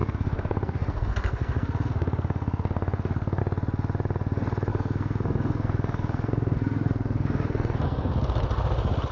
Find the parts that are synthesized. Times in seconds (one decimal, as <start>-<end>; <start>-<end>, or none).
0.0-3.4; 4.7-8.1